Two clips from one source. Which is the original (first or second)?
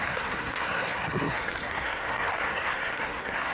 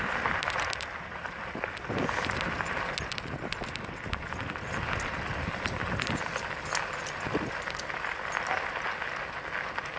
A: second